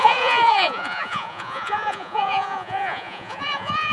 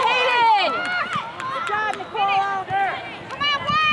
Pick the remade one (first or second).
first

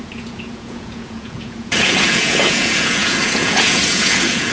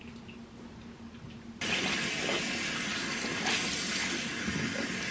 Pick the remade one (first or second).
first